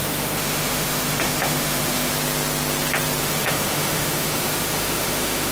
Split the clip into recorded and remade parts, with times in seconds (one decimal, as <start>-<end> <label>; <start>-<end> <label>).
0.0-2.1 remade; 2.1-3.2 recorded; 3.2-5.5 remade

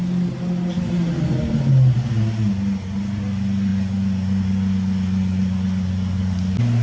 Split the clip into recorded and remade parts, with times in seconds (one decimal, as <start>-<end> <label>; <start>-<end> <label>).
0.0-6.8 recorded

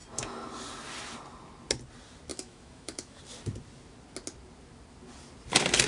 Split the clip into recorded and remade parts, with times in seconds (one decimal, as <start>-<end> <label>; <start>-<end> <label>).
0.0-2.3 recorded; 2.3-3.2 remade; 3.2-5.9 recorded

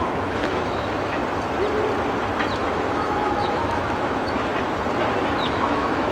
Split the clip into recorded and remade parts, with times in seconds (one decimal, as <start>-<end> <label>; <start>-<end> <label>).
0.0-1.2 remade; 1.2-2.6 recorded; 2.6-4.5 remade; 4.5-5.4 recorded; 5.4-6.1 remade

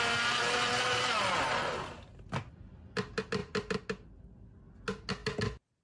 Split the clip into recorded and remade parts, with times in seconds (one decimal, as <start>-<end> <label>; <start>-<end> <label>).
0.0-5.8 recorded

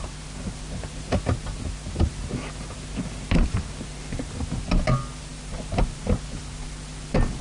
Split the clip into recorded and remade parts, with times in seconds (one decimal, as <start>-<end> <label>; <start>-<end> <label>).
0.0-7.4 recorded

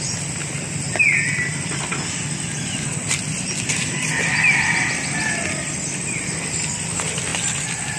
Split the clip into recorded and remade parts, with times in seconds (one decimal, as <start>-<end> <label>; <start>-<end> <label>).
0.0-8.0 recorded